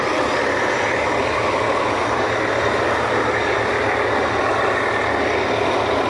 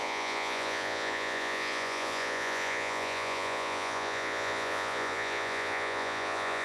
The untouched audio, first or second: first